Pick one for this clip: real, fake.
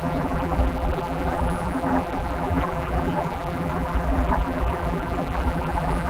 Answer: fake